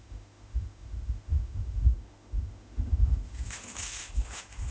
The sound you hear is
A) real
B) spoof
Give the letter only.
B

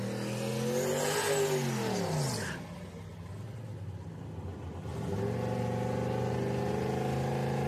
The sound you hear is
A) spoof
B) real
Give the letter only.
B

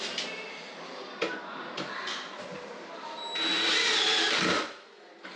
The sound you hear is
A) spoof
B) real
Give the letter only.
B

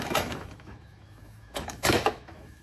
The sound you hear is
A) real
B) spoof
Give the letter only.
B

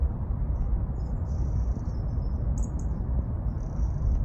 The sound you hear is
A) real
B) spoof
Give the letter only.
A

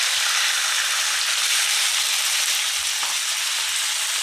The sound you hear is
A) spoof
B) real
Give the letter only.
B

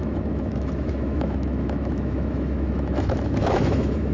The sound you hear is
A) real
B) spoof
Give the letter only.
B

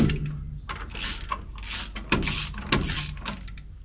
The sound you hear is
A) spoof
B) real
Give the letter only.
B